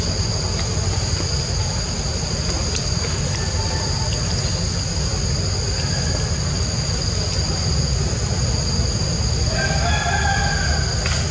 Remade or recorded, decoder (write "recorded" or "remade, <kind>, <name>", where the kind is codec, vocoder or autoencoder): recorded